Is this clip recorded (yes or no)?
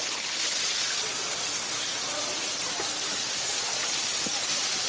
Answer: no